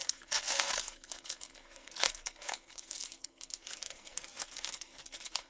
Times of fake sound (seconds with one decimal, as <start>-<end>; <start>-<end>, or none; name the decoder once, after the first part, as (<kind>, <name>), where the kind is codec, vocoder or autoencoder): 0.0-5.5 (codec, SNAC)

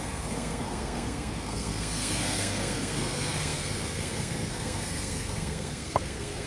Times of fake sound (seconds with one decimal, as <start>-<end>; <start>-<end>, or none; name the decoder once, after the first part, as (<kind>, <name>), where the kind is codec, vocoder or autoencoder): 0.0-6.5 (codec, SNAC)

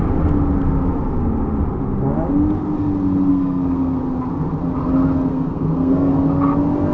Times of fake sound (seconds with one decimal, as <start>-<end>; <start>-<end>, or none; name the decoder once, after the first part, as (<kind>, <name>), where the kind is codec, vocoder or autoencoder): 3.3-4.0 (codec, SNAC); 5.3-6.1

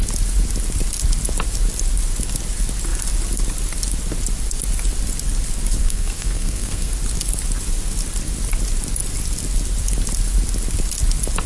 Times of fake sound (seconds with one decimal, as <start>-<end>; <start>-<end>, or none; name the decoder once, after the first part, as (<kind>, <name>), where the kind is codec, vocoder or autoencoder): 5.8-6.9 (codec, SNAC)

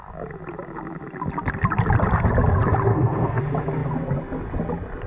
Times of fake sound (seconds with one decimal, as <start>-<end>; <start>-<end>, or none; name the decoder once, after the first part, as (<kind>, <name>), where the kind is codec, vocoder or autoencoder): 2.9-3.4 (codec, SNAC)

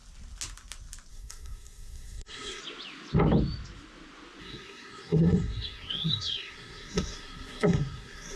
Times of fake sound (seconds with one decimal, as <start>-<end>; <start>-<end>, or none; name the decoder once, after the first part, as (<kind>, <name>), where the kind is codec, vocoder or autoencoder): 1.1-2.6 (codec, SNAC); 4.4-8.4

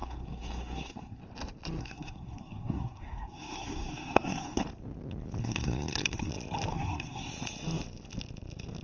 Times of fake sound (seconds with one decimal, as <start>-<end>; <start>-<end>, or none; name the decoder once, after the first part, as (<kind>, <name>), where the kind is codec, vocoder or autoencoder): 0.0-1.2 (codec, SNAC); 1.8-4.6; 5.4-6.3; 6.7-7.3